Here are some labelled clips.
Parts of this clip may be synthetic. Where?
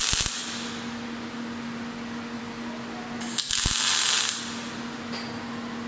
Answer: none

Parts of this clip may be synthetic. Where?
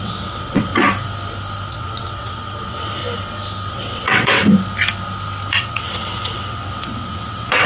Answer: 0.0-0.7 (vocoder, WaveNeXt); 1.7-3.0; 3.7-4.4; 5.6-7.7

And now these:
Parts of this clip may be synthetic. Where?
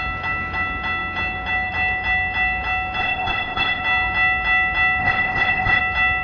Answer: 3.0-3.8 (codec, ZipCodec); 5.0-5.8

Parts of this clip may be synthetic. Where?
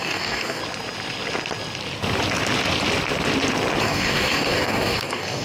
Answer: 0.0-0.6 (codec, DAC); 3.8-5.4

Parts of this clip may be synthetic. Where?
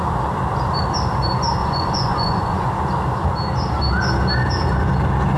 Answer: 1.6-2.7 (vocoder, Vocos)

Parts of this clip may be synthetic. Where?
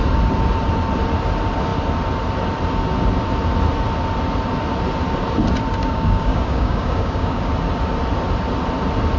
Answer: 5.8-7.5 (codec, DAC)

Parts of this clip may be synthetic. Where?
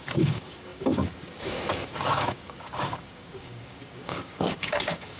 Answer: 0.0-5.2 (codec, DAC)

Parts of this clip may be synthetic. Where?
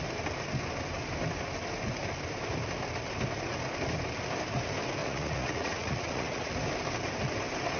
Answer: 5.0-6.5 (vocoder, Vocos)